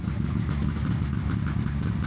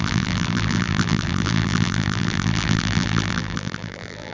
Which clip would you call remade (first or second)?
second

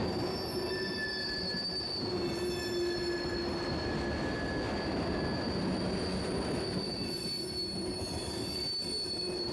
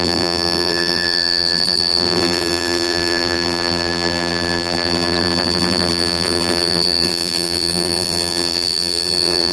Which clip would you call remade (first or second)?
second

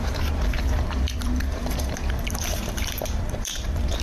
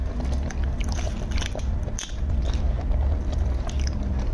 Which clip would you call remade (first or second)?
first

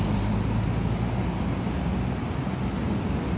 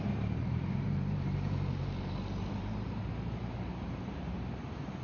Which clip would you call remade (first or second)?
second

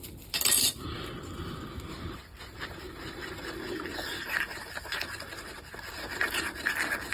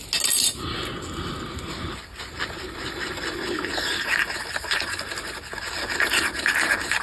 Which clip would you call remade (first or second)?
first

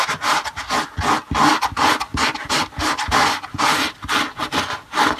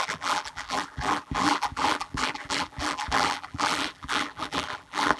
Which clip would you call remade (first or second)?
second